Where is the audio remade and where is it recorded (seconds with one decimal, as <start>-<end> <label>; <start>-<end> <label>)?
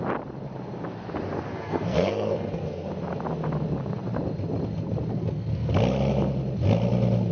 0.0-1.5 recorded; 1.5-2.9 remade; 2.9-5.1 recorded; 5.1-5.7 remade; 5.7-7.3 recorded